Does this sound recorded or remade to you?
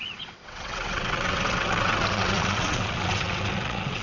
remade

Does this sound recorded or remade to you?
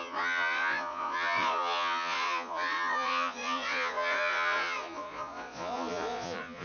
remade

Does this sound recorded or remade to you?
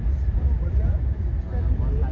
recorded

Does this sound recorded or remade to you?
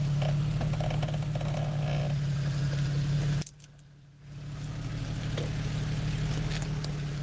recorded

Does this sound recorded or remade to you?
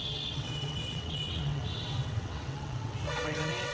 remade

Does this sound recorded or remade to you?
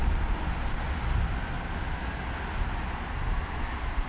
recorded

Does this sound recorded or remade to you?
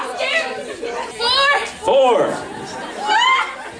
recorded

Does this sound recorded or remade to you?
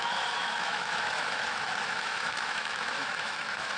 remade